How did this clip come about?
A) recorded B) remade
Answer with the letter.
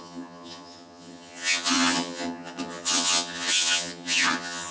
B